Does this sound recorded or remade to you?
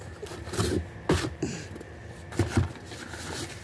recorded